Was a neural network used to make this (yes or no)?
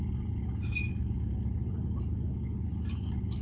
no